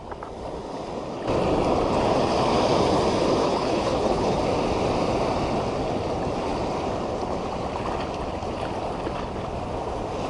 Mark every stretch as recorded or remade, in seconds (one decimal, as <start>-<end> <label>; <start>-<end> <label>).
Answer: 0.0-3.4 recorded; 3.4-4.4 remade; 4.4-10.3 recorded